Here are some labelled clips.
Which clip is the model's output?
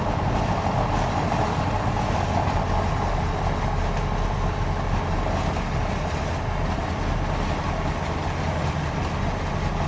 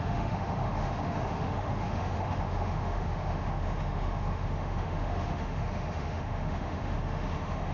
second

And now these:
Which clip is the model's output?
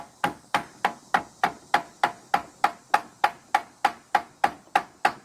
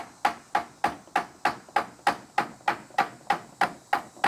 first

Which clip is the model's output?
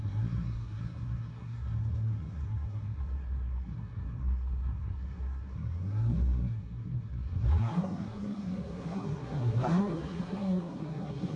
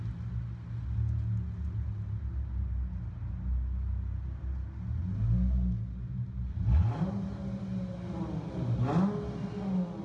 first